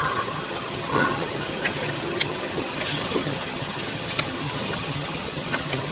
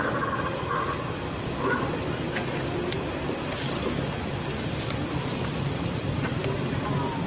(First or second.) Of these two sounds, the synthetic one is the first